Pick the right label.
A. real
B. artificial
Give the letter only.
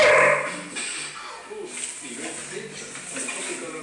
A